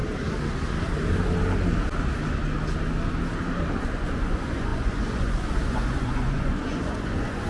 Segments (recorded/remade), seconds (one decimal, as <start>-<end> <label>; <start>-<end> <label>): 0.0-3.8 recorded; 3.8-7.5 remade